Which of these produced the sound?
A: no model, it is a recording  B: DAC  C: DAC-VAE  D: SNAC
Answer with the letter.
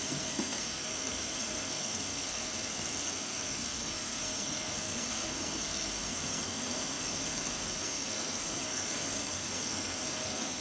D